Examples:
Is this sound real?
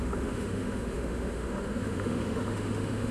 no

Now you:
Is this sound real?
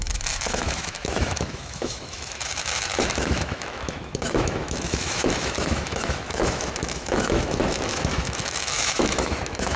no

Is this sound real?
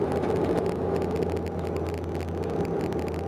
yes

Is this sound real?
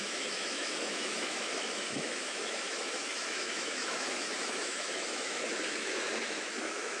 no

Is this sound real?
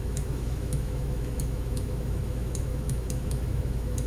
no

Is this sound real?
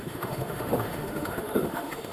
no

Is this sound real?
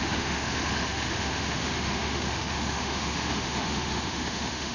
no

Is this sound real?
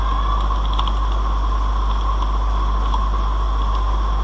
yes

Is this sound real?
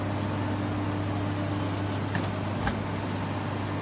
yes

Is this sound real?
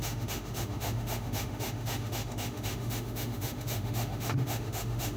no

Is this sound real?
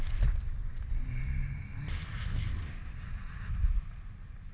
yes